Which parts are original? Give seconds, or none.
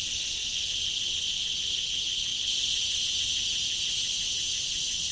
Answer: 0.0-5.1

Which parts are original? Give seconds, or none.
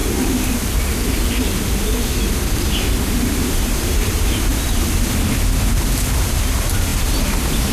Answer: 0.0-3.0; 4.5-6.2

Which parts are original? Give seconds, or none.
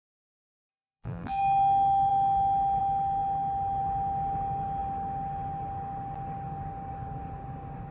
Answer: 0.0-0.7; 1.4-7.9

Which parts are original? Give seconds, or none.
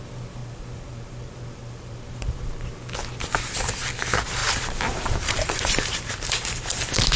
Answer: 0.0-0.4; 2.7-4.4; 6.8-7.2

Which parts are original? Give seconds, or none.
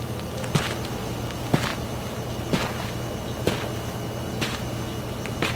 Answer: 0.0-5.6